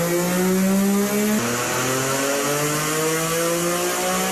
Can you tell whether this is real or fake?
real